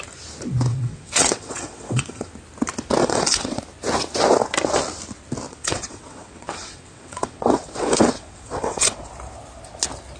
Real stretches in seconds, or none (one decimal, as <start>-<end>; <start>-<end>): 0.0-0.7; 2.3-3.0; 3.6-5.5; 9.1-10.2